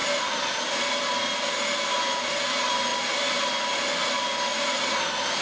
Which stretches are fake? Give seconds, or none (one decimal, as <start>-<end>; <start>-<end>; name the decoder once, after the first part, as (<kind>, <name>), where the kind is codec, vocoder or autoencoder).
none